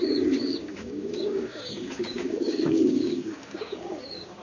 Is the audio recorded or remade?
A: remade